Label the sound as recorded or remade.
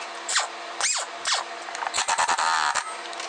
recorded